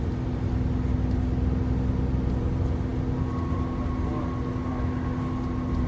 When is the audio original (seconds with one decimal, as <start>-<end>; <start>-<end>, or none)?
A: 0.0-5.9

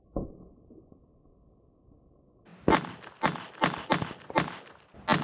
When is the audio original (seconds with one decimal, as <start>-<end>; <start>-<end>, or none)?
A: 0.0-5.2

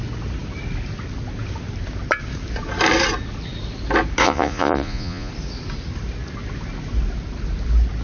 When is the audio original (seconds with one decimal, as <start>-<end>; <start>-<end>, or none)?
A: 0.0-4.2; 5.3-8.0

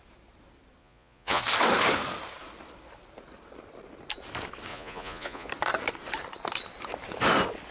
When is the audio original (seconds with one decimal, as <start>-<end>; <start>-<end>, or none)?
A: 0.0-0.8; 1.4-4.7; 5.5-7.7

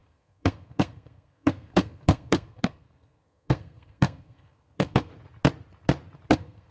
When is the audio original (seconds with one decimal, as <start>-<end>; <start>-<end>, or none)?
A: 5.1-6.3

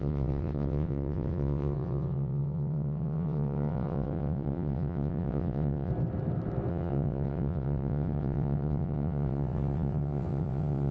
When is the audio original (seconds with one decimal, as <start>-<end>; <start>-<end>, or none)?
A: 5.9-6.7

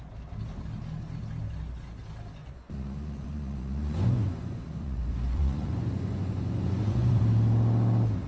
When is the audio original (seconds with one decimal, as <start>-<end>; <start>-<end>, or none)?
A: 0.0-2.4; 7.2-8.3

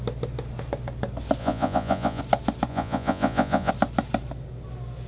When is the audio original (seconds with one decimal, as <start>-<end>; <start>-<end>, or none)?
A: 0.0-1.4; 2.2-2.7; 3.7-5.1